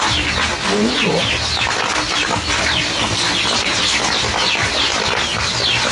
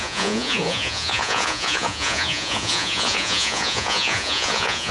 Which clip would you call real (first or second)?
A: first